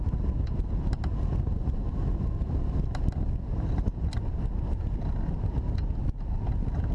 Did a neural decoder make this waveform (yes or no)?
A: no